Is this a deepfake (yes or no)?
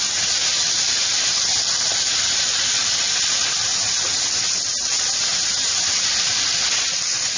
no